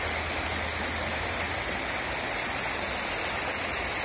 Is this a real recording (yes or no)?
yes